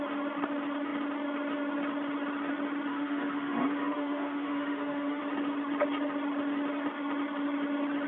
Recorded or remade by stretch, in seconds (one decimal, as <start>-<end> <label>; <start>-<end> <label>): 0.0-2.9 recorded; 2.9-5.2 remade; 5.2-8.1 recorded